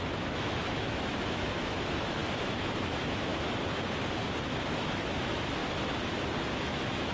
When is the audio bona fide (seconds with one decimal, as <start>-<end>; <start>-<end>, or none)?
3.3-4.5; 5.6-6.5

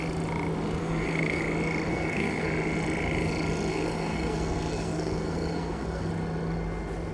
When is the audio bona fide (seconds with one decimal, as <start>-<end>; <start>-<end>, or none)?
0.0-0.8; 1.4-1.9; 2.5-3.7; 6.1-7.1

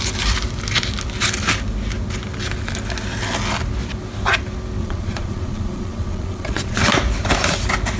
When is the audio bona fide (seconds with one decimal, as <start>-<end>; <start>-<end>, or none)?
0.0-4.8; 6.8-8.0

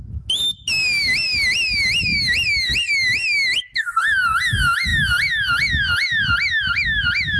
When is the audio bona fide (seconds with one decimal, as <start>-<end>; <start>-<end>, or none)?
0.0-7.4

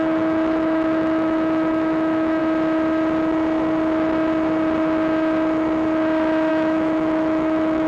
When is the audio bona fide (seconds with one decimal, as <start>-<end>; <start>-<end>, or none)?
2.4-6.5

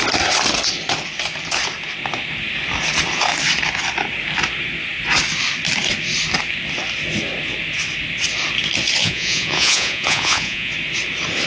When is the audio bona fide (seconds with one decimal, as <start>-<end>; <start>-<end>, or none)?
0.0-9.0; 10.7-11.5

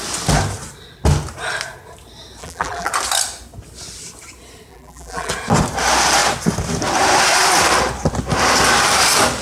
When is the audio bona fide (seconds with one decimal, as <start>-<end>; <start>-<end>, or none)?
0.0-2.4; 2.9-4.7; 5.3-9.4